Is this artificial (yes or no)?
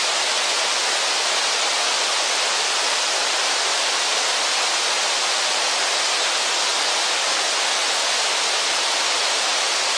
no